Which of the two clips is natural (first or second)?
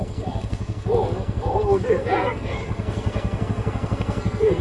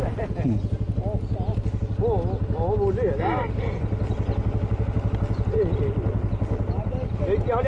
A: second